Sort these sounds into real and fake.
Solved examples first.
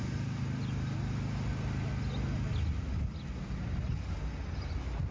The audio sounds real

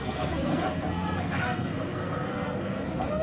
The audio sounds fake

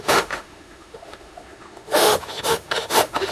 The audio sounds fake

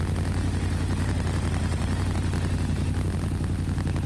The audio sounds real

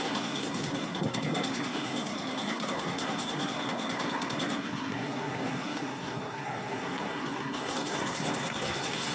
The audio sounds fake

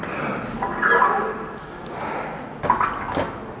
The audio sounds real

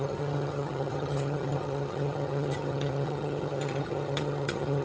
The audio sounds fake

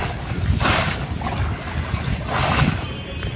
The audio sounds real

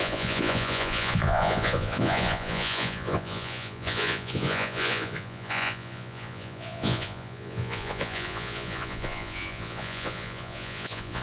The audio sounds fake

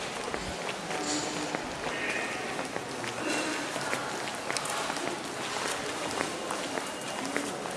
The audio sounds real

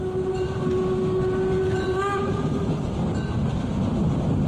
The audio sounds real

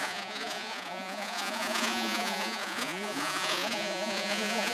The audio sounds fake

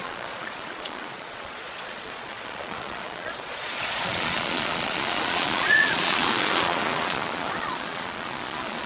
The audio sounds fake